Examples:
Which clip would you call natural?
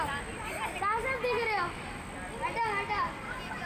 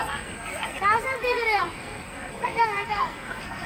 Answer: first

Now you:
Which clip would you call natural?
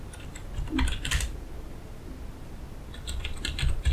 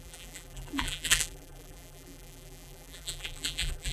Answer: first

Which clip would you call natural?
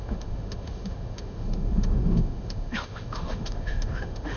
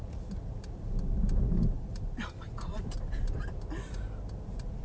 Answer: second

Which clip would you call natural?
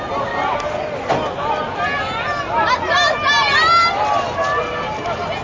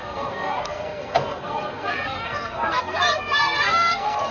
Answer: first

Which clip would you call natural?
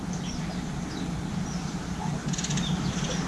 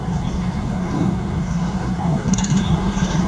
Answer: first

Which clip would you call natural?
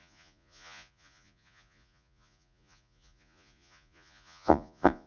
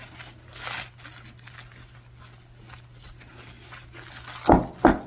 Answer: second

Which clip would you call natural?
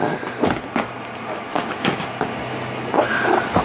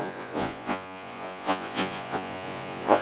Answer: first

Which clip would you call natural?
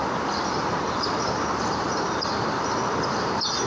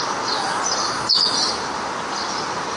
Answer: second